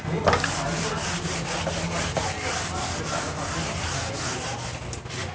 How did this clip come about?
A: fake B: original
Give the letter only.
B